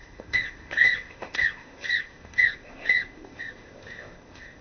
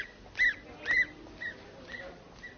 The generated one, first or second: first